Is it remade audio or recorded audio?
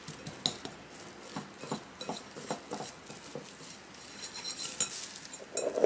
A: recorded